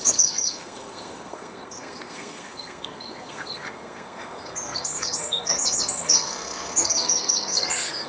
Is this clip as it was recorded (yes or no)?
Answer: no